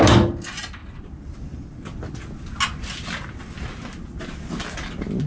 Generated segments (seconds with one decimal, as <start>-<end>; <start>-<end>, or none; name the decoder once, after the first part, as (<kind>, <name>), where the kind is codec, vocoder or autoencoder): none